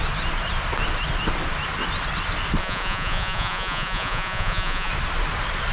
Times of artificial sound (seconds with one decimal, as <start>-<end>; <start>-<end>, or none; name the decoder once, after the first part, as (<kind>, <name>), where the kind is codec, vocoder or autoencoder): 2.6-4.9 (vocoder, Vocos)